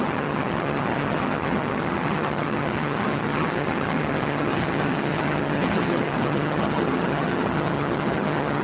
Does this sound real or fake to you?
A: fake